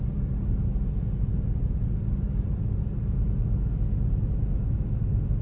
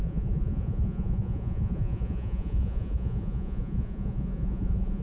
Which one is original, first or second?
first